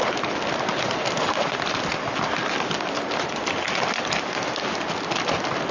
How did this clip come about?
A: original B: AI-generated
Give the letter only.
A